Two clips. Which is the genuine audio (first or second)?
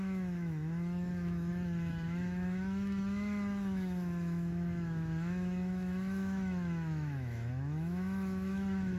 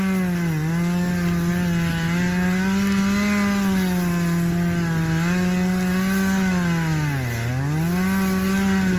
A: second